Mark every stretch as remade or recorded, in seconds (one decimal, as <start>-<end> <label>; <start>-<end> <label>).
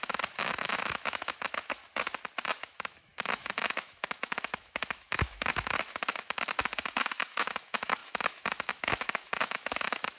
0.0-1.8 remade; 1.8-2.6 recorded; 2.6-10.2 remade